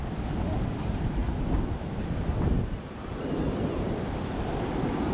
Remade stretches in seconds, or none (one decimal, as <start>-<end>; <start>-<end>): 0.0-1.2; 4.3-5.1

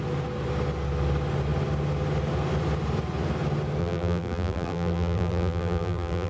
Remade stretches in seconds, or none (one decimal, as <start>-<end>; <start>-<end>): 3.8-6.3

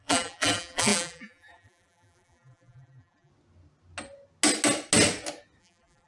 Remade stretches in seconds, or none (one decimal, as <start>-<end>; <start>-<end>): 0.0-3.3; 5.6-6.1